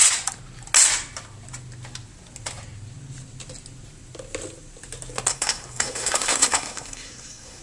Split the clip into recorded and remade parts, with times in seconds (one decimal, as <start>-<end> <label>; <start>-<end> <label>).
0.0-5.3 recorded; 5.3-7.6 remade